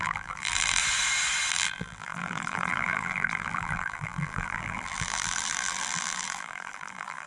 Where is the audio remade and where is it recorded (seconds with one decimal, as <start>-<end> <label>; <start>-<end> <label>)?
0.0-0.8 remade; 0.8-1.5 recorded; 1.5-7.3 remade